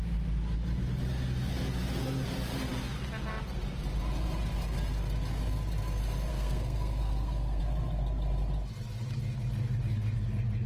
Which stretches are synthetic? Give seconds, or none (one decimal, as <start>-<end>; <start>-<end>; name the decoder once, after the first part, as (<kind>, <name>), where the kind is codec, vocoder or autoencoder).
6.3-7.6 (codec, SNAC)